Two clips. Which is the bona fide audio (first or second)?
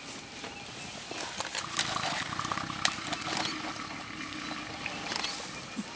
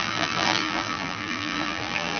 first